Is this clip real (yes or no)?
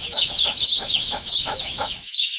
no